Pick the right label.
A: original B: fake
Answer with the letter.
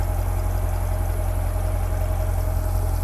A